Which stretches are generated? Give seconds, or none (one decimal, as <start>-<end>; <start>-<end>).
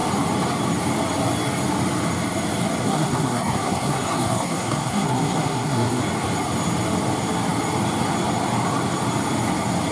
2.8-6.0